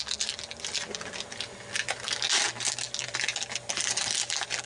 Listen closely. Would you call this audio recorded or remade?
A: recorded